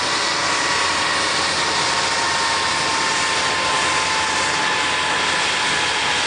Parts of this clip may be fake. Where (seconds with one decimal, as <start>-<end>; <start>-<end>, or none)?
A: none